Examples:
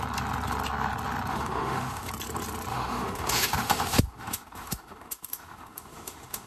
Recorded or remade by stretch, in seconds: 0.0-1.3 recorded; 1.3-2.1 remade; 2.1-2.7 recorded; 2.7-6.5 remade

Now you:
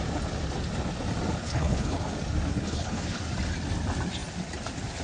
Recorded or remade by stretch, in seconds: 0.0-1.4 recorded; 1.4-2.0 remade; 2.0-2.5 recorded; 2.5-3.2 remade; 3.2-5.0 recorded

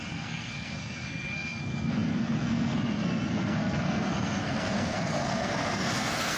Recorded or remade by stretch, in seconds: 0.0-6.4 remade

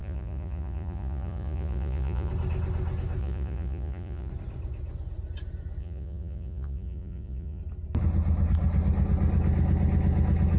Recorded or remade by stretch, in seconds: 0.0-2.3 remade; 2.3-3.2 recorded; 3.2-4.3 remade; 4.3-5.8 recorded; 5.8-7.6 remade; 7.6-10.6 recorded

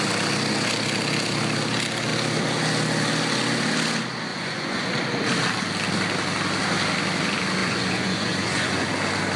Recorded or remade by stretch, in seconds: 0.0-4.3 recorded; 4.3-4.9 remade; 4.9-7.6 recorded; 7.6-8.9 remade; 8.9-9.4 recorded

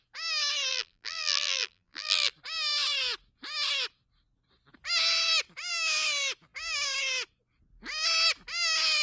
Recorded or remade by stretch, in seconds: 0.0-0.7 recorded; 0.7-2.3 remade; 2.3-9.0 recorded

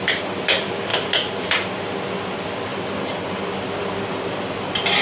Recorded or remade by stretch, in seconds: 0.0-0.9 recorded; 0.9-1.7 remade; 1.7-5.0 recorded